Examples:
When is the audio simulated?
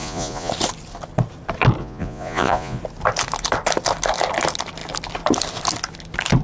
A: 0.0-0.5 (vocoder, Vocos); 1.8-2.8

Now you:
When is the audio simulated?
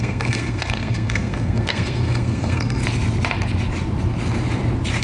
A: 0.0-2.8 (codec, SNAC)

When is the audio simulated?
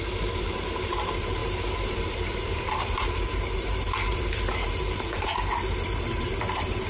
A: 0.0-6.9 (vocoder, BigVGAN v2)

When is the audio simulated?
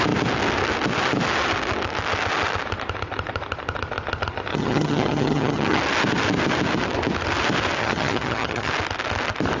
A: 4.5-5.8 (vocoder, HiFi-GAN); 7.8-8.7